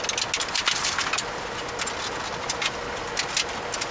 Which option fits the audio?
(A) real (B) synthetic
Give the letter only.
A